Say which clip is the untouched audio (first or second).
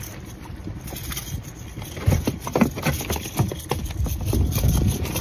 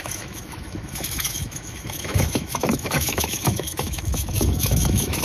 first